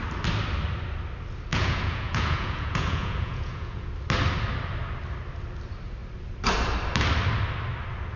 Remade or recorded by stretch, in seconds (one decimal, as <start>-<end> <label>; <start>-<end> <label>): 0.0-1.5 recorded; 1.5-3.9 remade; 3.9-8.2 recorded